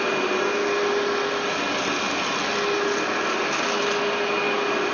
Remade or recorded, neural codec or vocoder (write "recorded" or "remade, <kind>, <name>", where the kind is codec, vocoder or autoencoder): recorded